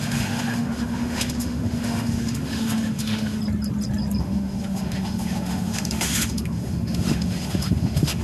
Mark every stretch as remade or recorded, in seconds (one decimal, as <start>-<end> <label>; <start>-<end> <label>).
0.0-3.4 remade; 3.4-4.2 recorded; 4.2-8.2 remade